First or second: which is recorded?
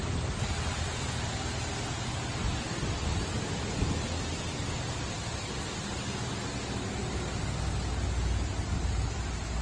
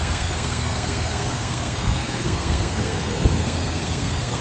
first